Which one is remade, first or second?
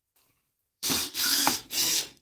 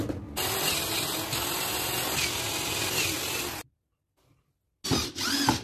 first